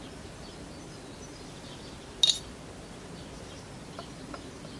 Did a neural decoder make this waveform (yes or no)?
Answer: no